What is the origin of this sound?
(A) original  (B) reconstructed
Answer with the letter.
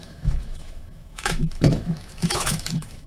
B